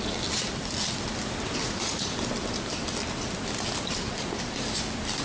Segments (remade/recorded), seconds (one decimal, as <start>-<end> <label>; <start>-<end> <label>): 0.0-1.6 recorded; 1.6-2.1 remade; 2.1-5.2 recorded